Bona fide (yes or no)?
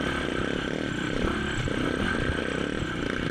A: yes